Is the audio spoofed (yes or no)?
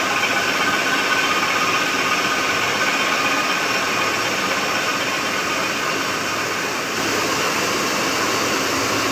no